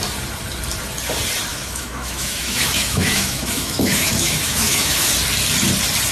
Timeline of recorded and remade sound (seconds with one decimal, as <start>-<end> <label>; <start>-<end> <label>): 0.0-1.5 recorded; 1.5-5.1 remade; 5.1-6.1 recorded